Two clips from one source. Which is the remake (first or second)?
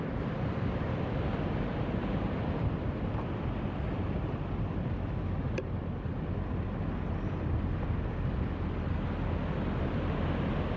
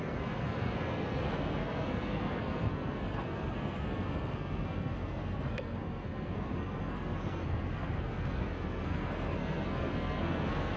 second